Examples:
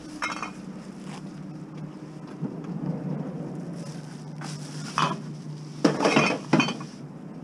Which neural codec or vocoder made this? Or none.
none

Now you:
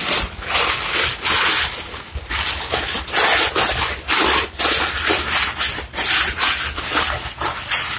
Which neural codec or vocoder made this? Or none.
none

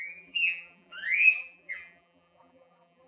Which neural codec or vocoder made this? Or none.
vocoder, BigVGAN v2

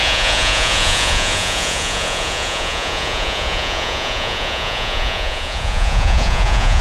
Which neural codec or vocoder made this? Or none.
vocoder, Vocos